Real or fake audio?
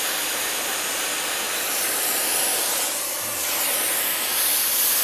fake